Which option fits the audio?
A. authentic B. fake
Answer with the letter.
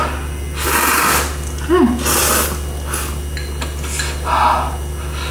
A